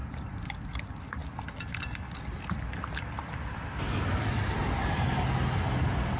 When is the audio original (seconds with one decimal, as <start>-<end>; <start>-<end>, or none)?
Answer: 0.0-6.2